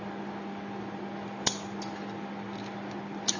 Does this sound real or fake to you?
real